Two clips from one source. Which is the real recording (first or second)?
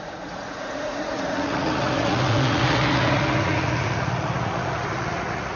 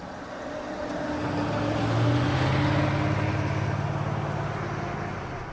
second